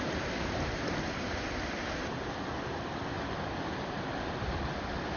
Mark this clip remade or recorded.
recorded